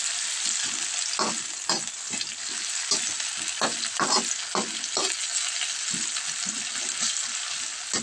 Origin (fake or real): real